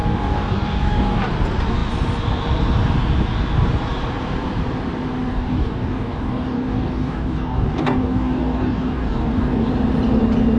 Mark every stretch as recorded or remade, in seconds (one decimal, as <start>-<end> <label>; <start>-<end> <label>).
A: 0.0-1.2 remade; 1.2-5.3 recorded; 5.3-9.7 remade; 9.7-10.6 recorded